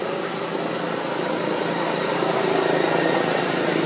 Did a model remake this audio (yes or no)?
no